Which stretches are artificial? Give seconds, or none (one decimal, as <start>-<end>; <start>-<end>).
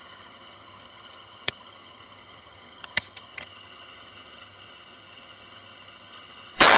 0.0-6.8